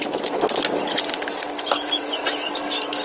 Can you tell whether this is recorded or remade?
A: recorded